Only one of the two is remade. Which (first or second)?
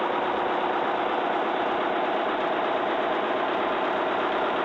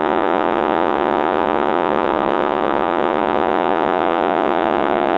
second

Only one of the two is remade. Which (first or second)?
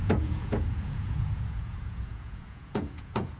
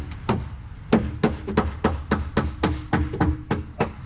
first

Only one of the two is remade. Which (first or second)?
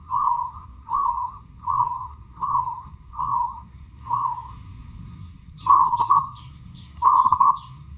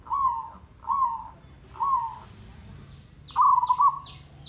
first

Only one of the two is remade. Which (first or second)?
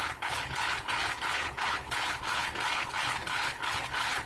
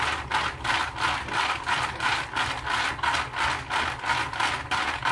first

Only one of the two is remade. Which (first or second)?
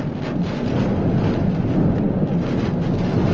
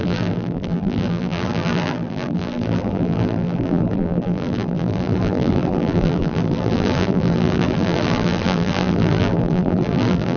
second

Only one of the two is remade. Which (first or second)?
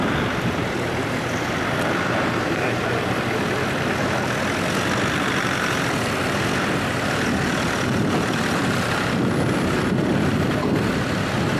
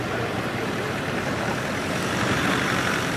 second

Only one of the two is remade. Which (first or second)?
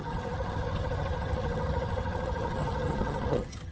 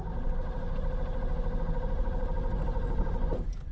first